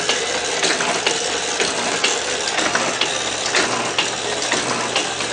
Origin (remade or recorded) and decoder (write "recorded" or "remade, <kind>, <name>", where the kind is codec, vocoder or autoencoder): recorded